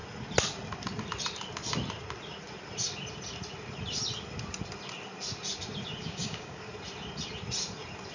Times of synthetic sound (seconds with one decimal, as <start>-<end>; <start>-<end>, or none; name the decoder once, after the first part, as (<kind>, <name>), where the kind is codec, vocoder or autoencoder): 6.0-6.7 (codec, DAC)